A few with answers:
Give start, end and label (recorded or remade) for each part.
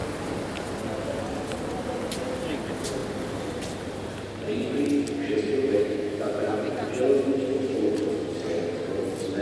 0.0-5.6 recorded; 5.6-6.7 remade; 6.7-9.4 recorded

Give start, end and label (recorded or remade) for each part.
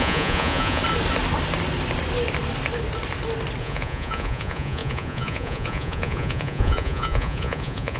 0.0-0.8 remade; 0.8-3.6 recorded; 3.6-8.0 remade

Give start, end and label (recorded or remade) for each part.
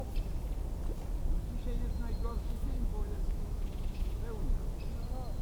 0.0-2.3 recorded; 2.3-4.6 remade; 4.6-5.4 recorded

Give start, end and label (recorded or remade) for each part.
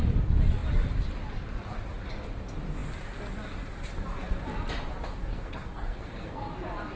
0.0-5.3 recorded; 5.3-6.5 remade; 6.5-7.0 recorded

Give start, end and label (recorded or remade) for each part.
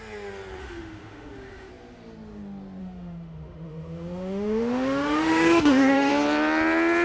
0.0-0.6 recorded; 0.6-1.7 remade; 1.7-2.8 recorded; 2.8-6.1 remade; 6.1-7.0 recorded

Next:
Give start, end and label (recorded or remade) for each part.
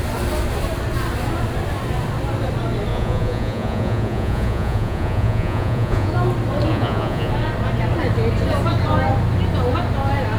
0.0-2.9 recorded; 2.9-6.1 remade; 6.1-6.7 recorded; 6.7-7.3 remade; 7.3-10.4 recorded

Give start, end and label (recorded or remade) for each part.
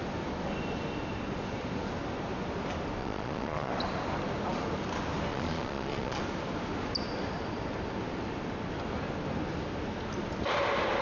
0.0-3.0 recorded; 3.0-3.7 remade; 3.7-5.3 recorded; 5.3-6.2 remade; 6.2-11.0 recorded